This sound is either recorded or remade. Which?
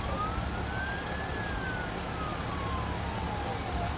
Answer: recorded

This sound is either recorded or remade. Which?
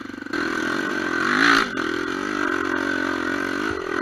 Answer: recorded